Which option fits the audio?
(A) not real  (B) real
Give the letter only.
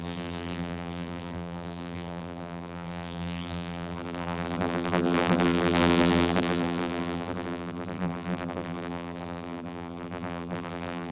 A